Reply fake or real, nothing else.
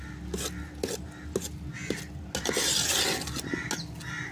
real